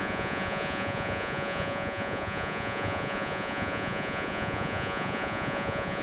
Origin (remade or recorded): remade